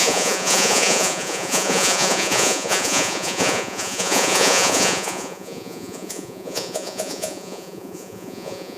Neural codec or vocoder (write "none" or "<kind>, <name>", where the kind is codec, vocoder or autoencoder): vocoder, Vocos